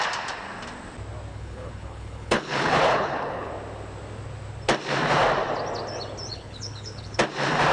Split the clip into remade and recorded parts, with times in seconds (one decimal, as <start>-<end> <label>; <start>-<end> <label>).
0.0-1.3 recorded; 1.3-3.5 remade; 3.5-6.3 recorded; 6.3-7.2 remade; 7.2-7.7 recorded